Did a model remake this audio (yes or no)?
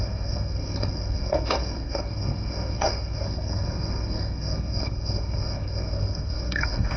yes